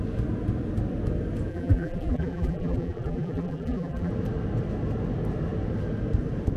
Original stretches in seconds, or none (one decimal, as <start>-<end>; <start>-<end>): 0.0-1.5; 4.1-6.6